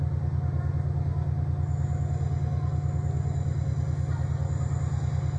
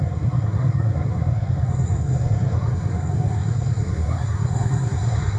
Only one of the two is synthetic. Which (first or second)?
second